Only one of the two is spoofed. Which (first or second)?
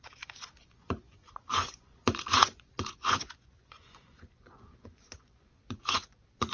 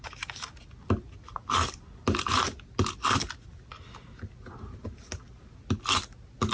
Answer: first